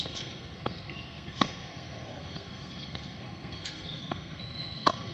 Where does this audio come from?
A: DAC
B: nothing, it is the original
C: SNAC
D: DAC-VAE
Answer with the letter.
C